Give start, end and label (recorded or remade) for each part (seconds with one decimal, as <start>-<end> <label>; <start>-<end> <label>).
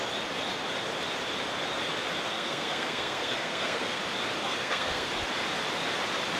0.0-2.3 recorded; 2.3-4.0 remade; 4.0-4.4 recorded; 4.4-5.1 remade; 5.1-6.4 recorded